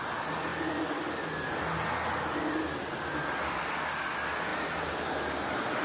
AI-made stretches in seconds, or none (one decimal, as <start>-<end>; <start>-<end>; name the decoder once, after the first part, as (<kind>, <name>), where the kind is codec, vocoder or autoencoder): none